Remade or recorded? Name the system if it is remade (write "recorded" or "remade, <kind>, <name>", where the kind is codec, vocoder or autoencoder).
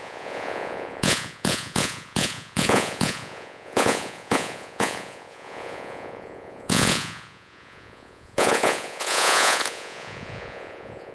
remade, vocoder, Vocos